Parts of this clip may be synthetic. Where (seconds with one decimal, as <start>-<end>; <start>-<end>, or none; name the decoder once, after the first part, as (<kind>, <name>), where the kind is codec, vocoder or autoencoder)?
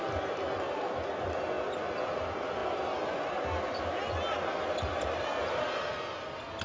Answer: none